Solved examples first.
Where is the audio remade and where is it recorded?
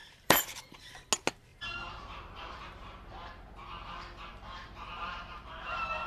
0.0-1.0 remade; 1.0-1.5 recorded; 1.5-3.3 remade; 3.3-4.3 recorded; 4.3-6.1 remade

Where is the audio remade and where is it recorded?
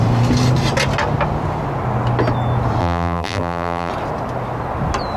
0.0-2.8 recorded; 2.8-3.9 remade; 3.9-5.2 recorded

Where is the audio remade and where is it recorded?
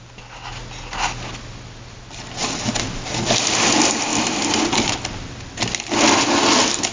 0.0-4.1 recorded; 4.1-5.6 remade; 5.6-6.9 recorded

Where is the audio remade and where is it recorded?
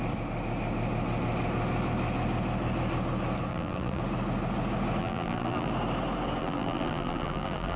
0.0-3.5 recorded; 3.5-4.0 remade; 4.0-5.0 recorded; 5.0-5.7 remade; 5.7-6.4 recorded; 6.4-7.8 remade